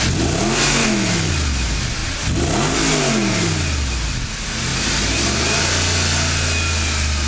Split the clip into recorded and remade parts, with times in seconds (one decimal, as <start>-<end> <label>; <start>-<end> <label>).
0.0-0.8 recorded; 0.8-1.3 remade; 1.3-7.3 recorded